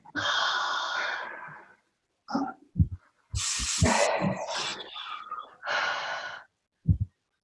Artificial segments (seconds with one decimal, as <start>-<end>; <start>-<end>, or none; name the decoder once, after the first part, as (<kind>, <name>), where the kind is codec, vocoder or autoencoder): none